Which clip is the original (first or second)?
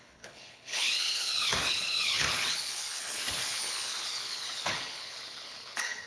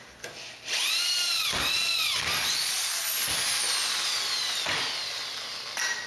second